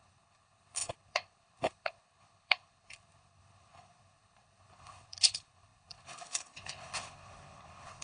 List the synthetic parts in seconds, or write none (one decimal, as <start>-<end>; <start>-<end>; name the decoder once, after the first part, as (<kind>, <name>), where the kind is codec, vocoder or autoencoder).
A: 0.0-8.0 (codec, HILCodec)